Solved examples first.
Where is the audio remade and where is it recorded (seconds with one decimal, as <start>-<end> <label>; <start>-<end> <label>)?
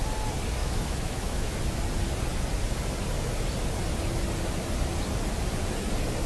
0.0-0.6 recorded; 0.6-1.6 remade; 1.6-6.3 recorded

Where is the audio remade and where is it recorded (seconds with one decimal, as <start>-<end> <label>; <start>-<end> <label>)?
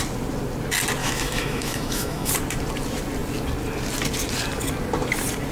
0.0-1.0 recorded; 1.0-2.3 remade; 2.3-5.5 recorded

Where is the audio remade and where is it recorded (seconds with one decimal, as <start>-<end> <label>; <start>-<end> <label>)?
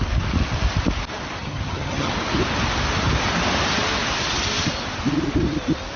0.0-1.4 recorded; 1.4-2.1 remade; 2.1-6.0 recorded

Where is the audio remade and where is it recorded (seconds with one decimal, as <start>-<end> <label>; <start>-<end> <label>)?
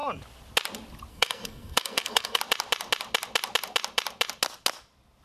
0.0-1.1 recorded; 1.1-2.4 remade; 2.4-5.2 recorded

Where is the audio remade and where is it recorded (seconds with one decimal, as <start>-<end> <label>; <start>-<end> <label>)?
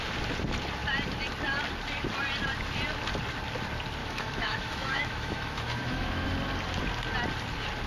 0.0-4.0 recorded; 4.0-6.3 remade; 6.3-7.9 recorded